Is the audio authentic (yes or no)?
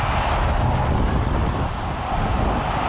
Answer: yes